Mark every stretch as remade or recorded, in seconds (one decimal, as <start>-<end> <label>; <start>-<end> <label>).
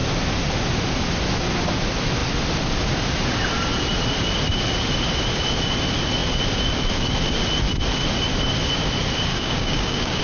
0.0-9.3 recorded; 9.3-10.2 remade